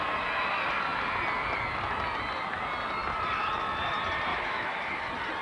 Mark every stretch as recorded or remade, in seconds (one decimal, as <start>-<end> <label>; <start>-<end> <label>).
0.0-4.3 recorded; 4.3-5.0 remade; 5.0-5.4 recorded